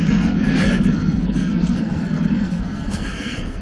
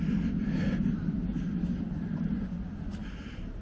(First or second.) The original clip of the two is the second